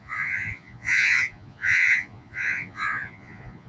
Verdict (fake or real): fake